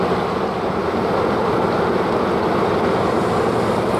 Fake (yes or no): no